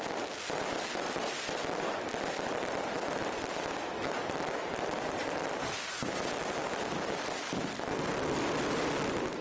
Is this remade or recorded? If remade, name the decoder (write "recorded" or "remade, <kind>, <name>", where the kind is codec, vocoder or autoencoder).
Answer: recorded